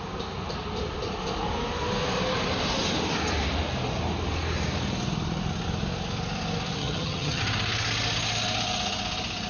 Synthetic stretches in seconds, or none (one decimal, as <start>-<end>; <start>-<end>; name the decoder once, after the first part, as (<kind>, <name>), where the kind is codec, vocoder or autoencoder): 6.8-7.4 (vocoder, HiFi-GAN)

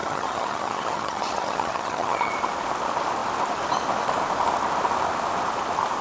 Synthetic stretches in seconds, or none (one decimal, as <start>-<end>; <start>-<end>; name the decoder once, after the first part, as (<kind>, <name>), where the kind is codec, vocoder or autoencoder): 0.0-2.3 (vocoder, HiFi-GAN)